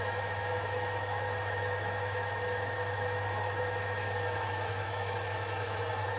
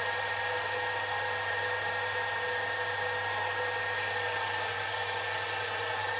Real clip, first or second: second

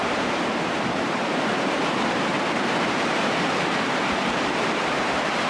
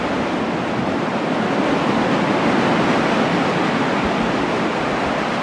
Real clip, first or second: second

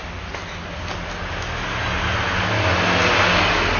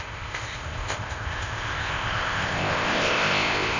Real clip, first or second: first